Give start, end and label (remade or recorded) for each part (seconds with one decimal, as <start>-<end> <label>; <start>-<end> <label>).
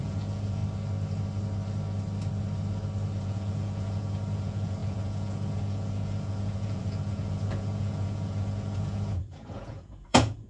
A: 0.0-0.6 remade; 0.6-3.2 recorded; 3.2-10.5 remade